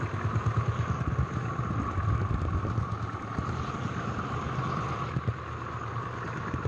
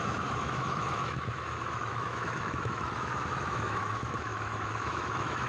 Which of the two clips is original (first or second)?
first